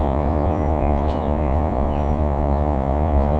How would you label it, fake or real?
fake